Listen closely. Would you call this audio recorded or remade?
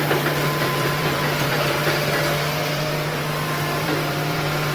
remade